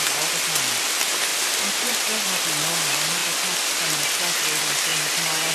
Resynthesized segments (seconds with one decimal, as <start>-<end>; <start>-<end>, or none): 4.9-5.5